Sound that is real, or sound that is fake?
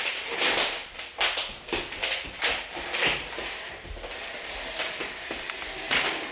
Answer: real